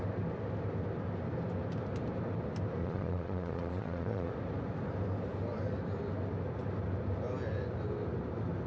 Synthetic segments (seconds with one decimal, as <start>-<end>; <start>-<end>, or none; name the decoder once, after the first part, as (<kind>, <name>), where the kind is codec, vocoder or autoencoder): 2.8-4.3 (vocoder, Vocos)